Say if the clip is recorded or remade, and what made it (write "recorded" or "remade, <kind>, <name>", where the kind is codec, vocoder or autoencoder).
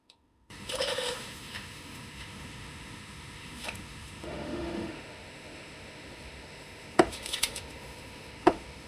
remade, autoencoder, DAC-VAE